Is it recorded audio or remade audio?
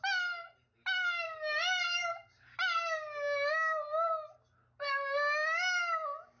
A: recorded